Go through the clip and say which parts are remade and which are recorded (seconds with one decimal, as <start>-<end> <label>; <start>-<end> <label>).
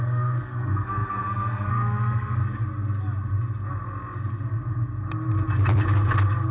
0.0-2.4 remade; 2.4-6.5 recorded